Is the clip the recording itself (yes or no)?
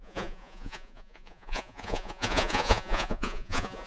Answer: no